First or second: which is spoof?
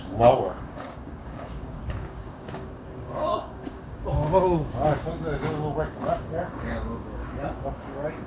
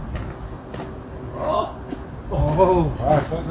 first